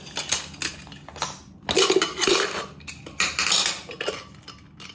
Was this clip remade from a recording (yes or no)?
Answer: no